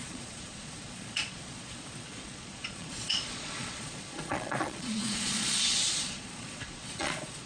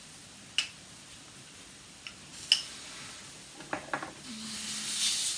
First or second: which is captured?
second